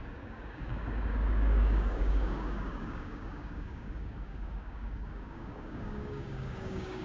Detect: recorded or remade remade